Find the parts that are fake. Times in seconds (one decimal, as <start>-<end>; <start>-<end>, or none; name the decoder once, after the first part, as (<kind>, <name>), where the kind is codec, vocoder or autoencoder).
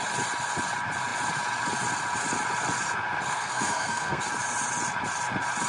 3.3-4.2 (codec, SNAC)